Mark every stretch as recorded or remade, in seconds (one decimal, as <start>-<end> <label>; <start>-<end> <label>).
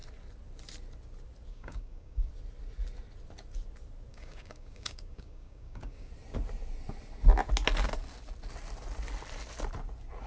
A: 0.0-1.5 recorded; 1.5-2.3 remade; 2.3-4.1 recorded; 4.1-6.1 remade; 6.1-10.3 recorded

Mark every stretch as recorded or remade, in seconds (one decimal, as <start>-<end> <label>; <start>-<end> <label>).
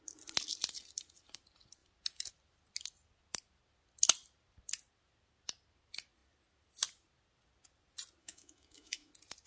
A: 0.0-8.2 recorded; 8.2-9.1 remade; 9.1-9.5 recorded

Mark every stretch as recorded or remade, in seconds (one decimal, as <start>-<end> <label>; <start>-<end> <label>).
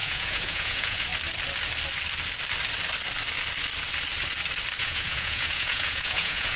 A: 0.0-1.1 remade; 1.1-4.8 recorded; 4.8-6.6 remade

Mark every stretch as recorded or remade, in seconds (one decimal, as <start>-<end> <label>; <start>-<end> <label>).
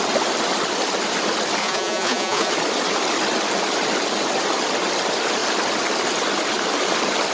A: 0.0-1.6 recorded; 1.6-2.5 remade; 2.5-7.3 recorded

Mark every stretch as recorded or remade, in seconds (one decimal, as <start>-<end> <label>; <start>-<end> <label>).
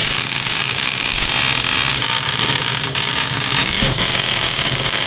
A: 0.0-1.3 remade; 1.3-1.9 recorded; 1.9-5.1 remade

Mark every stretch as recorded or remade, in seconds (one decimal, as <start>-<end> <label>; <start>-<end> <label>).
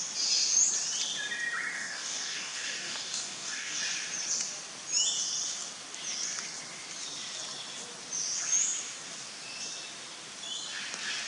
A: 0.0-1.7 recorded; 1.7-3.8 remade; 3.8-11.3 recorded